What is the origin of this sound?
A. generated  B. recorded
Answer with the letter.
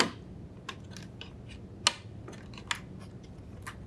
B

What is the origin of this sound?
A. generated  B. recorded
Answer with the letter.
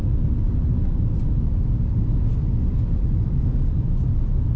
B